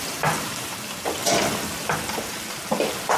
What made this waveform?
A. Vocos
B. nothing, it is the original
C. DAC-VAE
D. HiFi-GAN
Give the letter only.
B